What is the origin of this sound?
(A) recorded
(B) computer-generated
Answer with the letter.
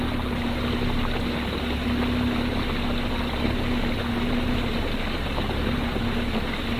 A